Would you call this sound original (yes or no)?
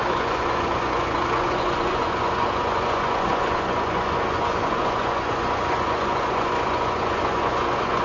no